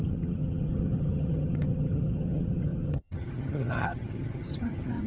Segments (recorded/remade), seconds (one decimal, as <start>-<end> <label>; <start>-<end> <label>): 0.0-5.1 remade